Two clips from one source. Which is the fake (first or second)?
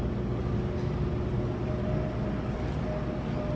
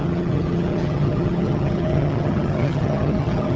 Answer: second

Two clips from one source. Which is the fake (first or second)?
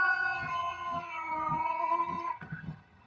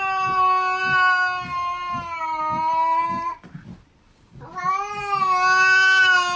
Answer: first